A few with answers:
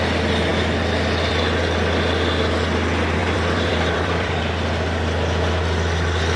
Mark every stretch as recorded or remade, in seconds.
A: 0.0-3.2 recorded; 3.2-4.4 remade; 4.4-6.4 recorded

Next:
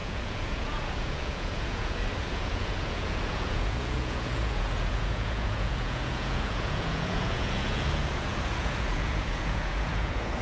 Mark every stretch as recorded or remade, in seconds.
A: 0.0-10.4 remade

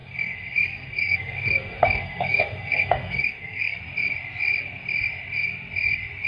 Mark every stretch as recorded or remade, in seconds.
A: 0.0-3.8 remade; 3.8-6.3 recorded